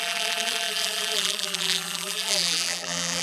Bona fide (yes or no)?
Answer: no